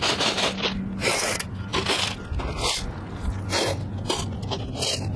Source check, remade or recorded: recorded